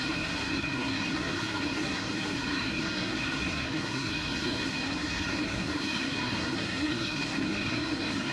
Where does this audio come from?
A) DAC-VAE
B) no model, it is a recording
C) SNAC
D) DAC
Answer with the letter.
C